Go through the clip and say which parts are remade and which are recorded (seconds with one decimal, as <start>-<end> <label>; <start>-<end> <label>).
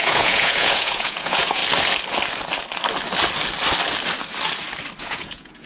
0.0-1.6 remade; 1.6-5.0 recorded; 5.0-5.7 remade